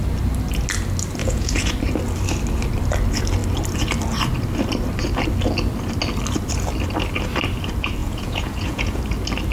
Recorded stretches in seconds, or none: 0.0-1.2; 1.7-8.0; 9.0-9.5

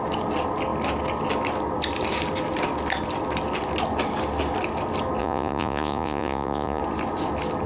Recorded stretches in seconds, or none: 0.0-5.2; 6.8-7.7

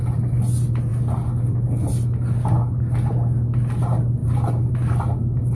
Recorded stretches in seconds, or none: 0.0-5.5

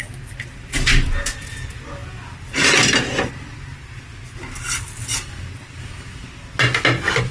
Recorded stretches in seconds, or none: 0.0-7.3

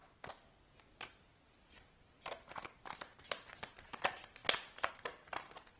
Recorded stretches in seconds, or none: 0.0-5.8